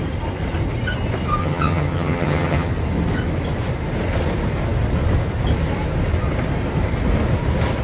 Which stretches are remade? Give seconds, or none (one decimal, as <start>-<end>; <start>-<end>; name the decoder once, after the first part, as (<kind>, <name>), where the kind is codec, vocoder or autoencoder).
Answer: 1.4-2.7 (vocoder, HiFi-GAN)